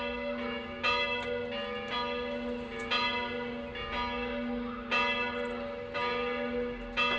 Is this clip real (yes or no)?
yes